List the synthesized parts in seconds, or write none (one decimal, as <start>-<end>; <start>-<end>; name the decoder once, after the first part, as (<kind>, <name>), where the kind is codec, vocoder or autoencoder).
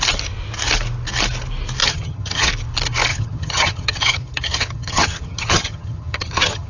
1.8-2.5 (vocoder, HiFi-GAN); 3.1-6.7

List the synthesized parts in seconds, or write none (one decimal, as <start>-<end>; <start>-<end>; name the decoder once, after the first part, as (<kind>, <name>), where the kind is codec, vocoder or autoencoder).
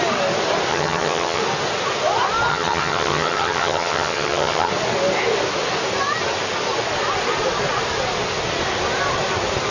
0.7-1.4 (vocoder, HiFi-GAN); 2.5-4.7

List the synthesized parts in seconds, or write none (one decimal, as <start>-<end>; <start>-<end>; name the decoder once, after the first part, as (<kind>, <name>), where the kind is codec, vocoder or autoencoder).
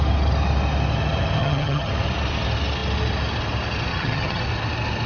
1.4-1.9 (vocoder, HiFi-GAN); 3.9-4.4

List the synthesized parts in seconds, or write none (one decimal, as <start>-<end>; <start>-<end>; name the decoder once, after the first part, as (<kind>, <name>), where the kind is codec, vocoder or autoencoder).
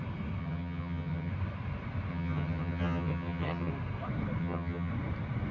0.4-1.3 (vocoder, HiFi-GAN); 2.1-3.7; 4.4-4.9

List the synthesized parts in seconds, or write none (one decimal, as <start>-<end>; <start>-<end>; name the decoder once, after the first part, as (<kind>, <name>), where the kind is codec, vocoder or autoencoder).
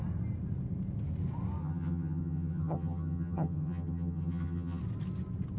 1.6-4.8 (vocoder, HiFi-GAN)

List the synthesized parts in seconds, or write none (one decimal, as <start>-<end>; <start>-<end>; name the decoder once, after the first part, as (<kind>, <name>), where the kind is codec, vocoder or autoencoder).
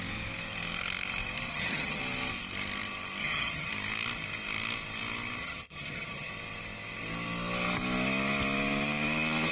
1.5-2.0 (vocoder, HiFi-GAN); 3.2-3.7; 5.4-6.3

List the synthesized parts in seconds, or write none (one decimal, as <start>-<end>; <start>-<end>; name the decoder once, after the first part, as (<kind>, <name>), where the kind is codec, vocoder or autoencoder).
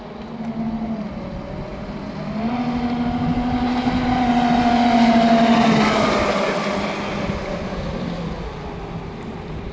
none